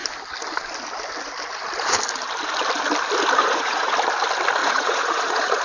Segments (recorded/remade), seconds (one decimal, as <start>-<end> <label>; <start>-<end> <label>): 0.0-3.4 recorded; 3.4-3.9 remade; 3.9-4.6 recorded; 4.6-5.6 remade